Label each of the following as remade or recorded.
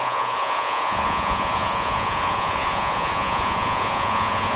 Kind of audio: remade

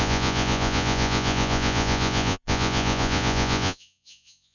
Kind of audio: remade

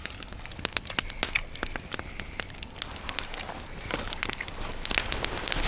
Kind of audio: recorded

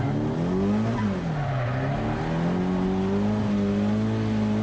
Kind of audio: recorded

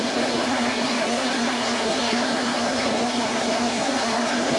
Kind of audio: remade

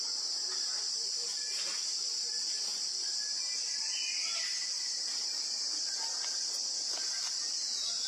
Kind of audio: recorded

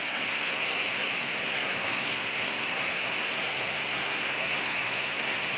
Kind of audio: remade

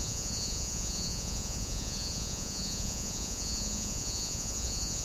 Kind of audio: remade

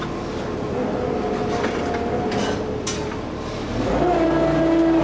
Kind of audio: recorded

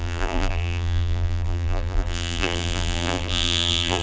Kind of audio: remade